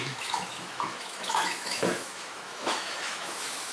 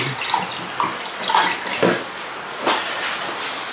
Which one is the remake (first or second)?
first